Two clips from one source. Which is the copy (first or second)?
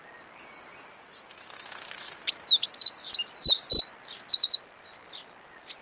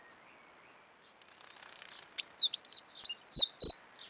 second